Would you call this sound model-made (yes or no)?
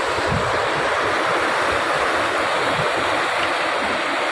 no